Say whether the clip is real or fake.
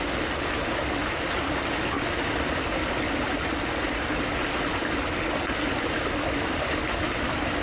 real